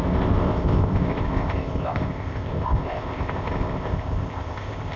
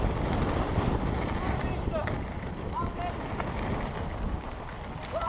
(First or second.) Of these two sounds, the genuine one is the second